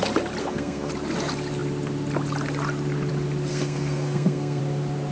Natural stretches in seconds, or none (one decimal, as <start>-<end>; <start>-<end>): 0.0-0.4; 0.9-3.5; 4.6-5.1